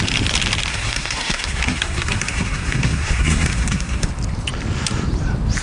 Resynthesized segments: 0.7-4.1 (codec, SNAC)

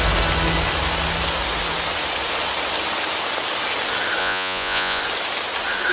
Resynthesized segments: 4.2-5.0 (vocoder, Vocos)

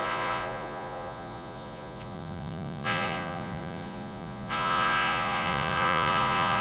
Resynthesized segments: 0.0-6.6 (vocoder, Vocos)

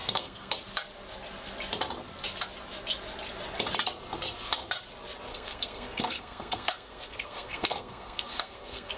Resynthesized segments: 0.0-0.5 (codec, SNAC); 5.3-9.0

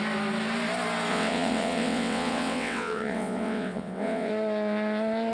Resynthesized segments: 1.1-4.3 (vocoder, WaveNeXt)

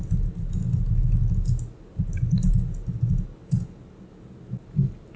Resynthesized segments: none

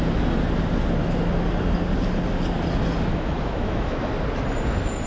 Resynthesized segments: 3.1-4.1 (autoencoder, DAC-VAE)

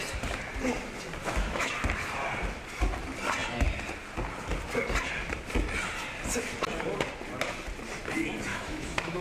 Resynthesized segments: 1.2-1.7 (autoencoder, DAC-VAE); 8.5-9.2